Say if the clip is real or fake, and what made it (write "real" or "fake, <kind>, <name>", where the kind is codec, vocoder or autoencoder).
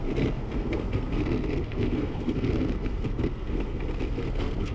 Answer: fake, codec, SNAC